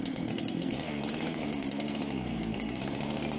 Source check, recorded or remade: remade